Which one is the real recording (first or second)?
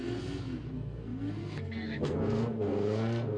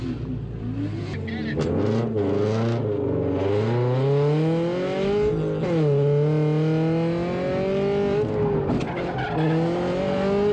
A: second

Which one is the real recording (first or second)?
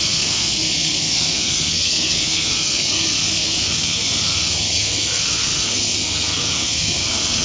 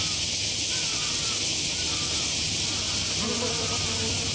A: second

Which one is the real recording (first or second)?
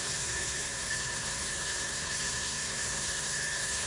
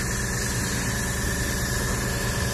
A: second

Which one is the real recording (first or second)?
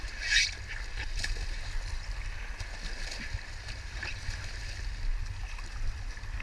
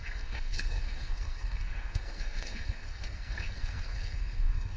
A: first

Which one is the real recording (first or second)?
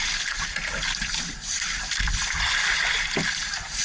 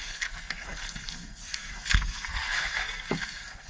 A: first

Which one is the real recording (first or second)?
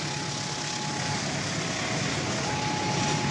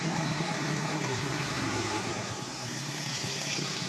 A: first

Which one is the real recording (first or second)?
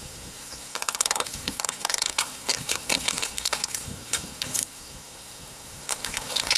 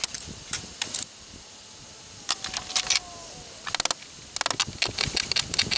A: second